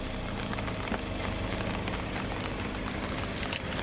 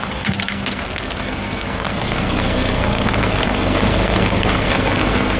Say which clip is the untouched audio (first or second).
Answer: first